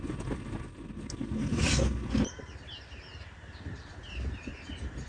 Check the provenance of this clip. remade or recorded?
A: recorded